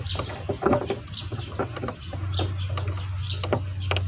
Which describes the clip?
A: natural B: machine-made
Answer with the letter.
A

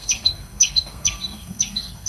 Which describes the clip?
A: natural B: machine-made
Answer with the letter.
B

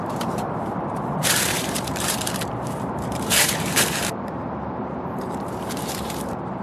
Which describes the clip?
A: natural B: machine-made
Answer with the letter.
B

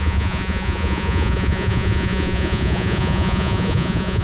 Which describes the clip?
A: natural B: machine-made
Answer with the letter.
B